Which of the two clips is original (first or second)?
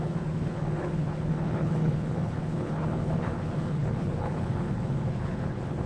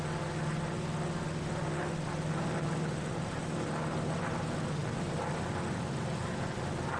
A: second